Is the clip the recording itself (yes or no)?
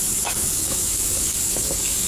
no